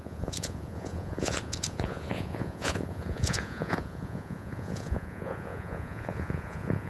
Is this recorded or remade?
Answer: remade